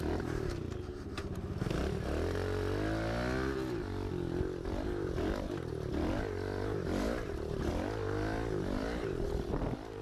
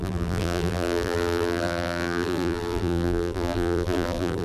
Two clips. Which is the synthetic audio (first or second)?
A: second